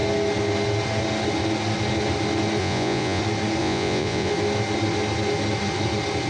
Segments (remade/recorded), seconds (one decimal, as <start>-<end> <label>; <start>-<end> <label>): 0.0-2.6 recorded; 2.6-3.2 remade; 3.2-3.6 recorded; 3.6-4.3 remade; 4.3-6.3 recorded